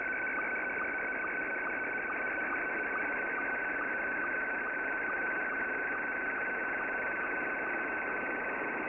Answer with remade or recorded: recorded